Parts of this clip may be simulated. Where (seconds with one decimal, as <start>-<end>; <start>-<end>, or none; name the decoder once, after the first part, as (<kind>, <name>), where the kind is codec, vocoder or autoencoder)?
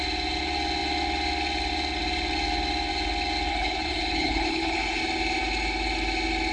3.5-5.0 (codec, HILCodec)